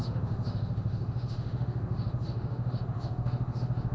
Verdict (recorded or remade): remade